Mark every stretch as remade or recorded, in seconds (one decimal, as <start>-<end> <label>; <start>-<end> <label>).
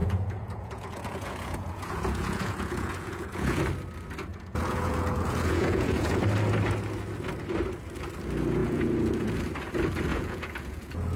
0.0-3.6 remade; 3.6-4.3 recorded; 4.3-6.2 remade; 6.2-8.6 recorded; 8.6-9.3 remade; 9.3-10.1 recorded; 10.1-11.2 remade